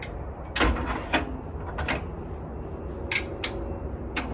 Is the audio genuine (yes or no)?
yes